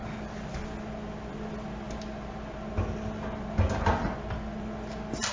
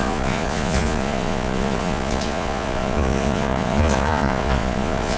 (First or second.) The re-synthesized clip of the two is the second